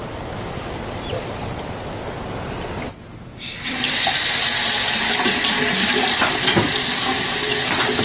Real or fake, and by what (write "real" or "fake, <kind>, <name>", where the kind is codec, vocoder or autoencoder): real